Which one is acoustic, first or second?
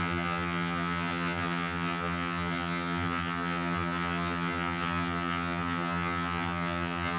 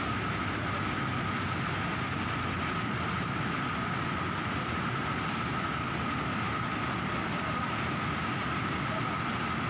second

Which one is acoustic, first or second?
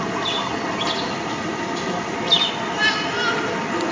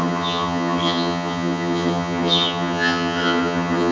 first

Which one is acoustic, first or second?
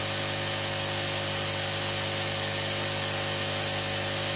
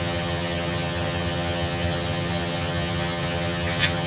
first